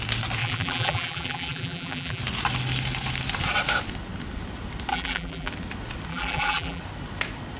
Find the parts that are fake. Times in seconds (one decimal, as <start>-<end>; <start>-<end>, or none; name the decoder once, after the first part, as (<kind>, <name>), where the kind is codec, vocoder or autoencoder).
0.4-2.2 (vocoder, BigVGAN v2); 4.9-5.5; 6.1-6.8